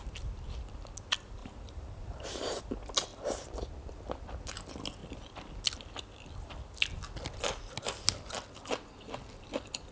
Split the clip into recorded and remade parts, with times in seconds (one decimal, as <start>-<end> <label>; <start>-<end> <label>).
0.0-1.4 recorded; 1.4-2.6 remade; 2.6-9.9 recorded